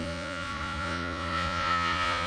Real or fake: fake